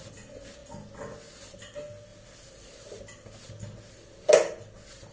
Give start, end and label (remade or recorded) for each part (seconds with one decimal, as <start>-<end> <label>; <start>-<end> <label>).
0.0-5.1 recorded